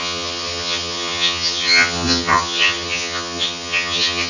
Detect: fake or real fake